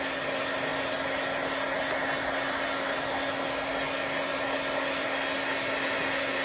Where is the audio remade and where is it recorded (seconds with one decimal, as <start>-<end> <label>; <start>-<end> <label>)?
0.0-6.4 recorded